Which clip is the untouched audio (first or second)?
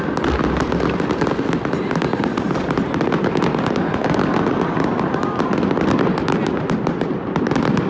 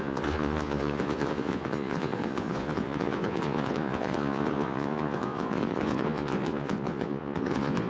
first